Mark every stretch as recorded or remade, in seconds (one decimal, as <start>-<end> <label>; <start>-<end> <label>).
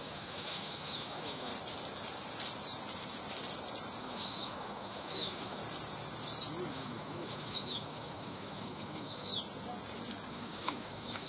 0.0-1.5 remade; 1.5-4.0 recorded; 4.0-5.6 remade; 5.6-6.7 recorded; 6.7-9.3 remade; 9.3-10.3 recorded; 10.3-11.3 remade